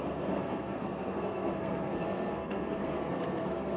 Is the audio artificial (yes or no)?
yes